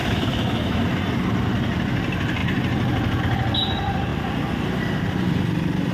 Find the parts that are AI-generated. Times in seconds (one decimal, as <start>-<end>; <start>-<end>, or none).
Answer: 0.0-0.8